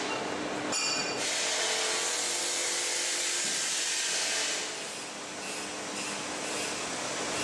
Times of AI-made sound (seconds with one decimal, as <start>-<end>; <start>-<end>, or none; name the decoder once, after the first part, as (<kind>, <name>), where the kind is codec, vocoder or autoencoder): none